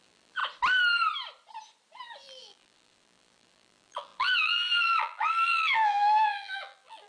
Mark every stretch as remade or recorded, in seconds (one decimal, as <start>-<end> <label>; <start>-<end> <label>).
0.0-0.4 remade; 0.4-2.2 recorded; 2.2-7.1 remade

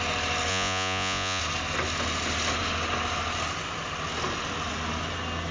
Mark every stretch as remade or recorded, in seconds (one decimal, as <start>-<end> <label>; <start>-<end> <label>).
0.0-0.5 recorded; 0.5-1.4 remade; 1.4-5.5 recorded

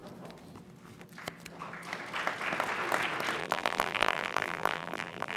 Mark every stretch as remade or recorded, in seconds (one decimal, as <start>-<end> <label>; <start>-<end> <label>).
0.0-3.4 recorded; 3.4-5.4 remade